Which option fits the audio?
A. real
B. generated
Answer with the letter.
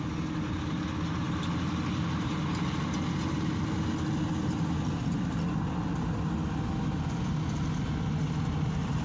A